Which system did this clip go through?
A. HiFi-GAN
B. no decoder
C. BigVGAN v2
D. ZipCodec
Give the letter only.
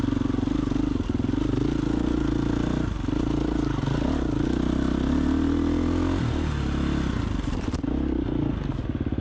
B